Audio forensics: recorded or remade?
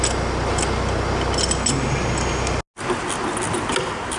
recorded